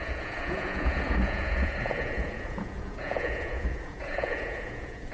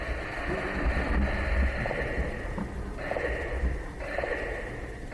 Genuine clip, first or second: second